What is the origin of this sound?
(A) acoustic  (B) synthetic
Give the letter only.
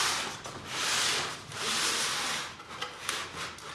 A